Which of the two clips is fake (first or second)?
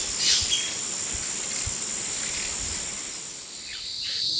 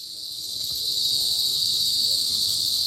second